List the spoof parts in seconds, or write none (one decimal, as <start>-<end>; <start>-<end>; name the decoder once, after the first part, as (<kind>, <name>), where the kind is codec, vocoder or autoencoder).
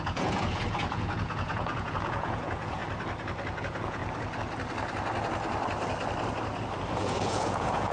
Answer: 0.0-2.8 (vocoder, Vocos); 3.6-4.0; 7.0-7.9